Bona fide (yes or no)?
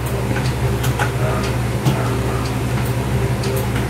yes